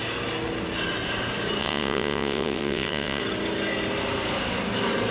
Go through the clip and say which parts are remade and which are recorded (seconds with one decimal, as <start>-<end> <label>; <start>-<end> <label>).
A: 0.0-1.6 recorded; 1.6-3.2 remade; 3.2-5.1 recorded